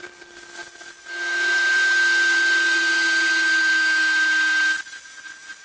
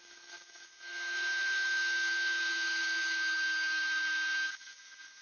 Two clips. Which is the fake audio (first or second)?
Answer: second